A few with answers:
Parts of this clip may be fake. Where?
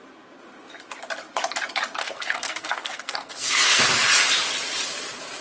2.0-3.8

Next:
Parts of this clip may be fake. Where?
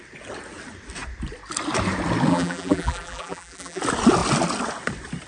2.3-3.8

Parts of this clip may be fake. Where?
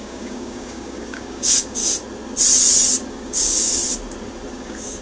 0.0-1.8; 3.1-3.8; 4.5-5.0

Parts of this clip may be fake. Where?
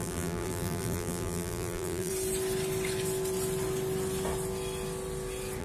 0.0-2.1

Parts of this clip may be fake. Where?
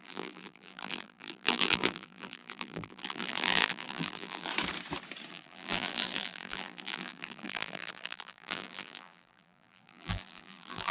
0.0-4.5; 5.3-10.9